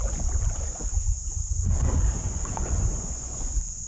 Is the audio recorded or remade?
remade